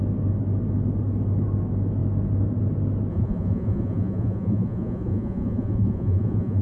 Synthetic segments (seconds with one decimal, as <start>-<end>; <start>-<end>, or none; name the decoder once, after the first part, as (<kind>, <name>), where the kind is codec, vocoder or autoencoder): 3.1-6.6 (vocoder, Vocos)